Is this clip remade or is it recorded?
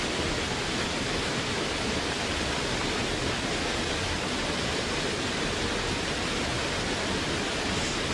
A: recorded